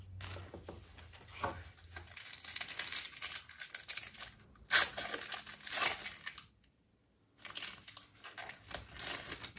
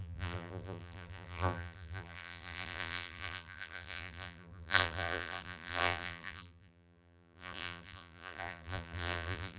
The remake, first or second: second